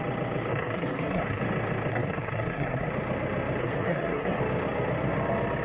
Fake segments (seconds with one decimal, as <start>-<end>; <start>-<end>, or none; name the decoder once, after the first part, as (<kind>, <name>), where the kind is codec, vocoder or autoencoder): 0.5-1.4 (codec, SNAC); 1.9-2.9; 3.6-4.4